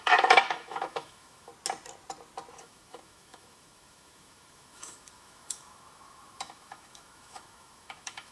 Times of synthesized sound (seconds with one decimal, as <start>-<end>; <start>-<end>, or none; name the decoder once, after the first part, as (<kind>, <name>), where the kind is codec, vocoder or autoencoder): 0.0-1.5 (autoencoder, DAC-VAE); 2.6-8.3